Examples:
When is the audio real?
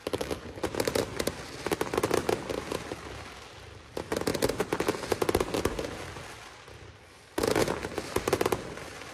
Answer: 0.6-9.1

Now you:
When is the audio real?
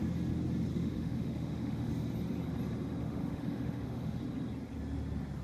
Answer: 0.0-0.7; 1.9-3.0; 4.2-5.4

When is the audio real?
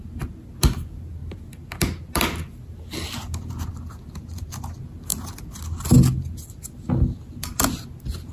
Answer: 0.0-8.3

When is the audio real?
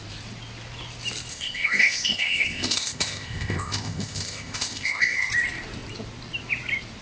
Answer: 0.0-1.3; 5.3-7.0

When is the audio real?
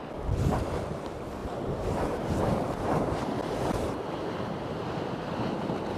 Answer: 0.0-1.4; 5.0-6.0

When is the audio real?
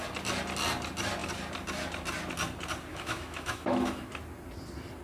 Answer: 0.0-2.9; 4.1-5.0